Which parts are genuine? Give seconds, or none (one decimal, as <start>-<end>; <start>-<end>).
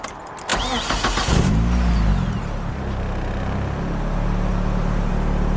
0.0-4.5; 5.1-5.6